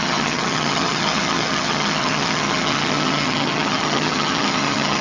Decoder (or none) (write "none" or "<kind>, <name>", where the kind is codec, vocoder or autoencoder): vocoder, HiFi-GAN